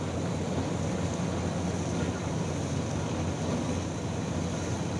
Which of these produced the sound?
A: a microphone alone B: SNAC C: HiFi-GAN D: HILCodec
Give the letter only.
A